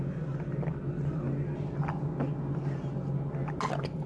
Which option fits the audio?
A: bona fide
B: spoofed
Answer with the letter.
A